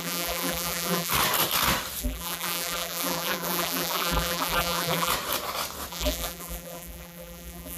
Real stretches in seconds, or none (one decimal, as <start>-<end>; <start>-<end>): 1.1-2.0; 5.1-5.9